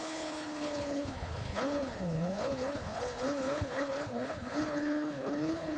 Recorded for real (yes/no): no